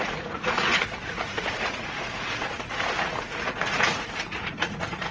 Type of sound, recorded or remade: remade